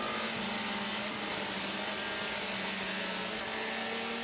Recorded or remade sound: recorded